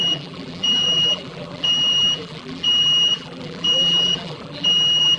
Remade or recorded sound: remade